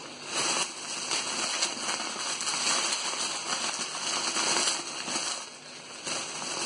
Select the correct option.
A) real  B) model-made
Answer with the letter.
A